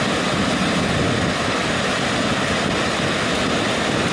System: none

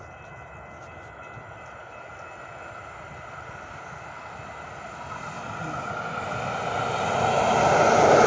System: none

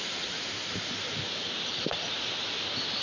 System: none